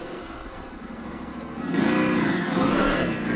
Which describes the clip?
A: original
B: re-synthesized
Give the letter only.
B